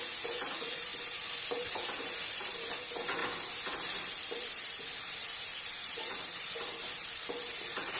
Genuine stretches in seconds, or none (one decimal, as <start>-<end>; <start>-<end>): 0.0-0.9; 1.6-3.2; 7.2-8.0